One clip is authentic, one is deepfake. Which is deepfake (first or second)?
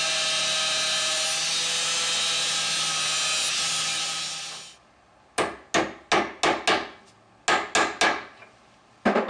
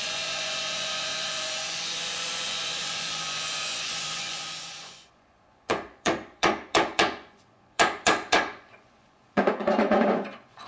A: second